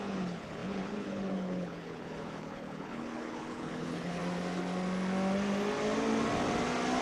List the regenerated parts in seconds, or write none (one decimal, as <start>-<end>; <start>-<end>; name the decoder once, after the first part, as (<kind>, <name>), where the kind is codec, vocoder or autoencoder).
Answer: 0.0-4.2 (codec, HILCodec)